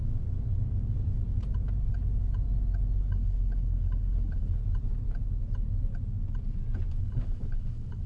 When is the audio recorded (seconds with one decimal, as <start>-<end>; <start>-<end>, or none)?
0.0-3.0; 4.6-7.0